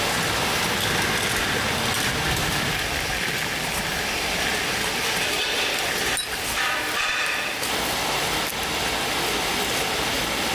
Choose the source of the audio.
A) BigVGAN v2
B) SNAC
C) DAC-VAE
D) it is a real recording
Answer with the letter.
D